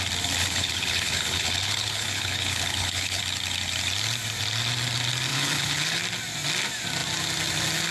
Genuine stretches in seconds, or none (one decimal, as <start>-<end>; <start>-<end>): 0.0-0.4; 3.2-5.3; 6.0-7.9

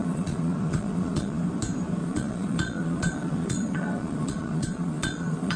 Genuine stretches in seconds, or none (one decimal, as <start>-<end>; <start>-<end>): 1.4-2.0

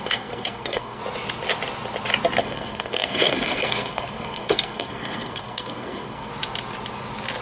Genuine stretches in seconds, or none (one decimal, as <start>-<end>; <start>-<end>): 1.0-2.4; 6.3-7.4

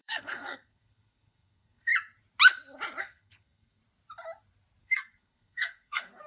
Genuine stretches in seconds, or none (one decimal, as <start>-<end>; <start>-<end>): 1.9-3.0; 3.8-4.8

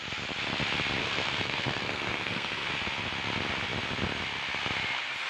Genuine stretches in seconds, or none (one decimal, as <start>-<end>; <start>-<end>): 0.0-1.0; 2.7-5.3

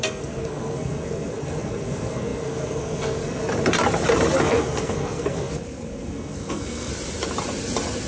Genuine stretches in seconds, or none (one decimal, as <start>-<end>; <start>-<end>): 3.4-4.4; 6.9-8.1

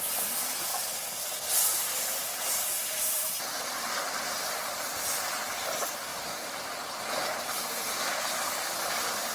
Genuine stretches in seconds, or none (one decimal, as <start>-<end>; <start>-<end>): 0.0-1.7; 3.2-6.1; 8.4-9.3